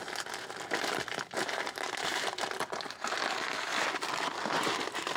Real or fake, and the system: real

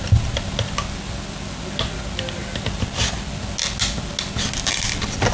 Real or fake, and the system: real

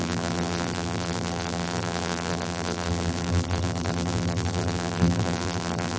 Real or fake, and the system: fake, vocoder, BigVGAN v2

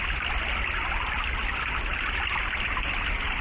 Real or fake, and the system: real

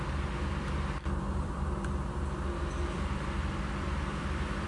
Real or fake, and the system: fake, vocoder, BigVGAN v2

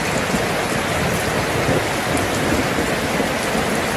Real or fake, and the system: real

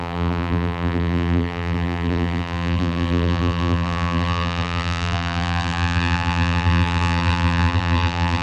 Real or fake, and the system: fake, vocoder, BigVGAN v2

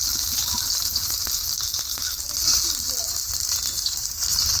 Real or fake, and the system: real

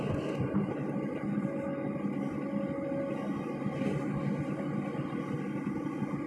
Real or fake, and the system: real